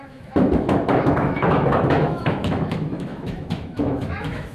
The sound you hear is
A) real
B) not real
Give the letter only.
B